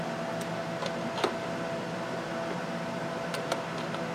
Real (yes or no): yes